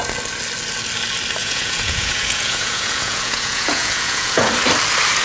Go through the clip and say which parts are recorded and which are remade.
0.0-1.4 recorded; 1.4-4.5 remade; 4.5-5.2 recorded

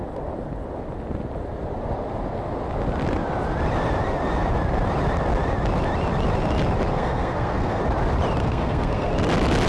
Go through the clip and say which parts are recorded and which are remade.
0.0-6.9 recorded; 6.9-7.8 remade; 7.8-8.4 recorded; 8.4-9.1 remade; 9.1-9.7 recorded

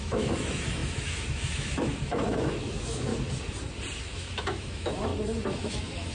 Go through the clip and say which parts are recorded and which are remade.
0.0-3.1 remade; 3.1-4.0 recorded; 4.0-5.1 remade; 5.1-5.6 recorded; 5.6-6.1 remade

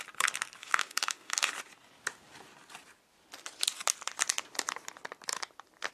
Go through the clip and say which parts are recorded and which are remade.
0.0-0.6 recorded; 0.6-1.5 remade; 1.5-5.9 recorded

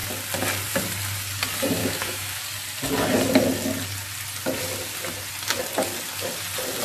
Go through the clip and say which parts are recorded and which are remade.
0.0-1.8 recorded; 1.8-2.4 remade; 2.4-6.8 recorded

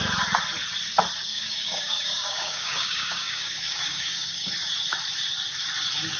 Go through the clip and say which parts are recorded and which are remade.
0.0-1.3 recorded; 1.3-4.5 remade; 4.5-6.2 recorded

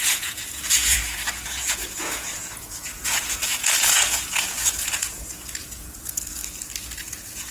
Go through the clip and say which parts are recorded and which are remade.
0.0-6.4 remade; 6.4-7.0 recorded; 7.0-7.5 remade

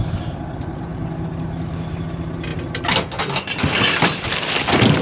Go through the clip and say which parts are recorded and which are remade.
0.0-5.0 recorded